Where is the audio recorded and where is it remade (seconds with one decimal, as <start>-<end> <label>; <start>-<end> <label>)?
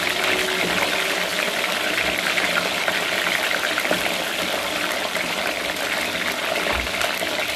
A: 0.0-1.3 recorded; 1.3-5.3 remade; 5.3-7.6 recorded